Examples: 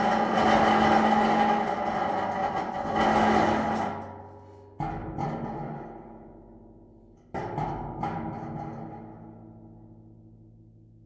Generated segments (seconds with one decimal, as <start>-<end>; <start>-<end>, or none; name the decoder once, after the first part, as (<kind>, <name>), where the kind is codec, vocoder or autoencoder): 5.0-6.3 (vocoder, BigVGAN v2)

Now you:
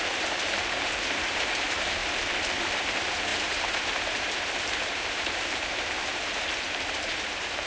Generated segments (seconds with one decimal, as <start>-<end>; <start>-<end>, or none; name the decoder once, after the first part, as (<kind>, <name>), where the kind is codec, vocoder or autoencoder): 0.0-2.0 (vocoder, BigVGAN v2); 2.6-7.7

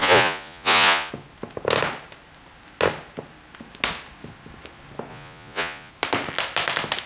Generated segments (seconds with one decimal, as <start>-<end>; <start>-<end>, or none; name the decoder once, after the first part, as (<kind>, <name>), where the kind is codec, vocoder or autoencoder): 0.0-1.1 (vocoder, Vocos); 5.1-5.9

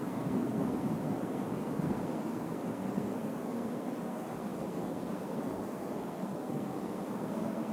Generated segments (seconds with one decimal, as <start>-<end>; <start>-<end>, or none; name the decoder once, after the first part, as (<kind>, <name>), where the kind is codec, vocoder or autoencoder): 0.0-7.7 (codec, SNAC)